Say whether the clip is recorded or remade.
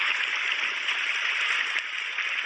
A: recorded